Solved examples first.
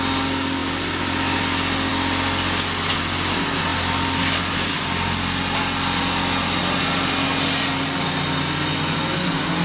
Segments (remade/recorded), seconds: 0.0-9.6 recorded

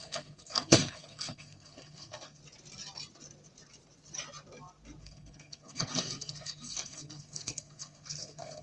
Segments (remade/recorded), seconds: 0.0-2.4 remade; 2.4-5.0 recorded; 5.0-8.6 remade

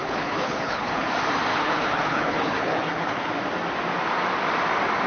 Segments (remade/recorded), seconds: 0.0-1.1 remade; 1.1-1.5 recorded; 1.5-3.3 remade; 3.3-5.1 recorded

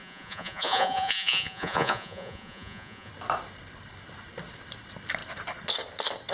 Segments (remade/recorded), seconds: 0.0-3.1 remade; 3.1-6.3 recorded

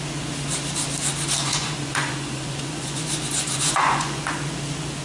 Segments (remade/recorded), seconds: 0.0-1.4 recorded; 1.4-4.4 remade; 4.4-5.0 recorded

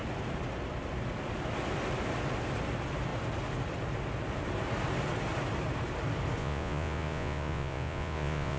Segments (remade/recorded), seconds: 0.0-6.4 recorded; 6.4-8.6 remade

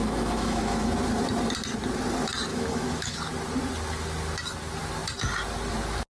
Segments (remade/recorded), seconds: 0.0-0.9 remade; 0.9-2.5 recorded; 2.5-3.2 remade; 3.2-6.2 recorded